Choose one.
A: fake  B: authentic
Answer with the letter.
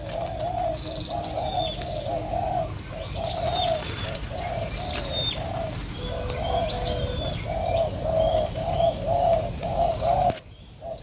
B